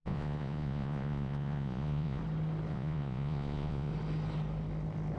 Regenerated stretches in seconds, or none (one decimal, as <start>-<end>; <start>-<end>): 0.0-2.2; 2.7-3.9